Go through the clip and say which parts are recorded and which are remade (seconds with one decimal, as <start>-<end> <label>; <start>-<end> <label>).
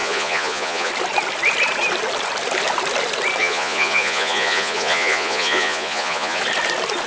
0.0-0.9 remade; 0.9-3.4 recorded; 3.4-6.4 remade; 6.4-7.1 recorded